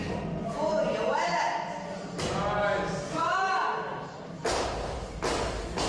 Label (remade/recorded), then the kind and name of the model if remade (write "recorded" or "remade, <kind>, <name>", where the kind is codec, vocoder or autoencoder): recorded